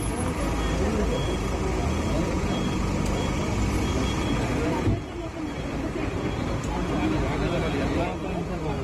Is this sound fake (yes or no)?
no